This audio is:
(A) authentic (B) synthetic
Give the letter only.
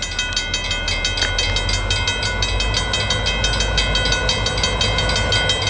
A